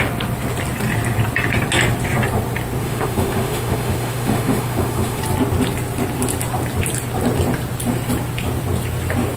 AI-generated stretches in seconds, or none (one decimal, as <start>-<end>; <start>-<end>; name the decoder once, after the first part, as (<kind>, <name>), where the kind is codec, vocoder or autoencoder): 2.8-5.2 (autoencoder, DAC-VAE)